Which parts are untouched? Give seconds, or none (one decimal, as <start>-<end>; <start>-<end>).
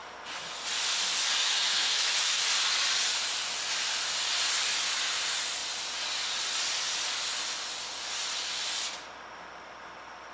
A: 0.0-1.4; 2.4-10.3